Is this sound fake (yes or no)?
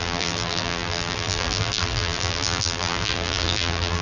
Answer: yes